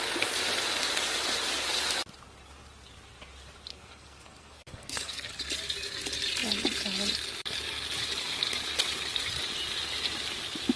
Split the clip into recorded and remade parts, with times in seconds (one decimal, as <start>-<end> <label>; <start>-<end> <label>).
0.0-3.7 recorded; 3.7-5.3 remade; 5.3-10.8 recorded